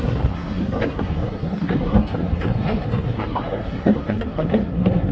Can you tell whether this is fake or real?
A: fake